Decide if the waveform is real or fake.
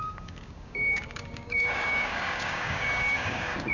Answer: fake